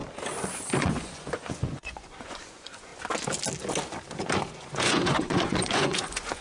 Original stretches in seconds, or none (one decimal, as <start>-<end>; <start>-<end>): 0.0-0.8; 2.9-4.5